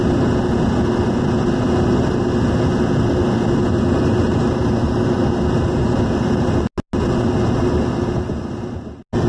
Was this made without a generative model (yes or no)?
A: yes